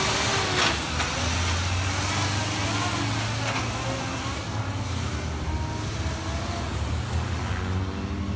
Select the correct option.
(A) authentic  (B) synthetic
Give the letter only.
A